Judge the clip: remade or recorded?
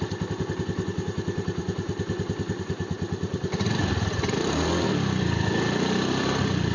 remade